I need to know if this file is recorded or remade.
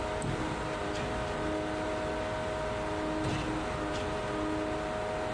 recorded